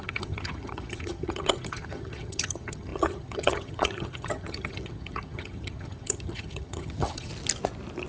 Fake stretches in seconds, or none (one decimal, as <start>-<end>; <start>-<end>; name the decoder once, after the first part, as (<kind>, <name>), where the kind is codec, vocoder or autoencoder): 0.0-7.3 (vocoder, HiFi-GAN)